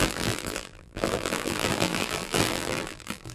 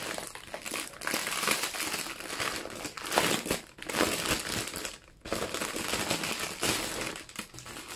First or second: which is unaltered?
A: second